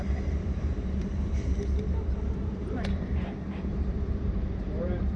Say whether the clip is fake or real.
fake